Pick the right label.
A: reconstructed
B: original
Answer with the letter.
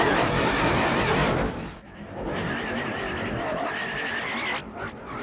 B